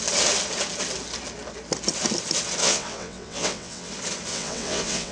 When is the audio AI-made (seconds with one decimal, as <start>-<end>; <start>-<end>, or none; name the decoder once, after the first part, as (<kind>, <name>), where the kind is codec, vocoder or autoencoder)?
2.6-3.9 (vocoder, WaveNeXt); 4.3-5.1